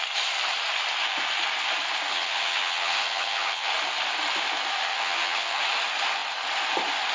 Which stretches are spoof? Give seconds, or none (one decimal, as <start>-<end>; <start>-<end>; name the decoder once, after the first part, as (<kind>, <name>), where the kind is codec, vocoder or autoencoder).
2.1-3.7 (vocoder, HiFi-GAN); 4.9-5.6